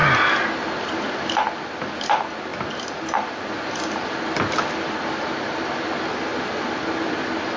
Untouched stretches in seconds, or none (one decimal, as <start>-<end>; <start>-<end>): 0.0-7.6